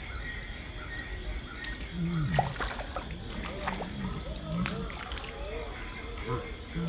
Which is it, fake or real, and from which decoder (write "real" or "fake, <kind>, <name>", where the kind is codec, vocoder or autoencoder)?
real